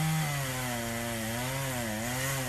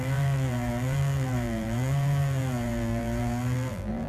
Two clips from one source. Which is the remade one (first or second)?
second